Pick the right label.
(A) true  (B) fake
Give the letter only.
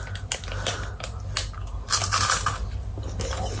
A